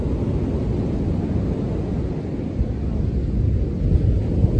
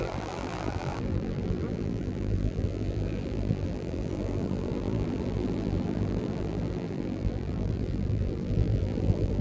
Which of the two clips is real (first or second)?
first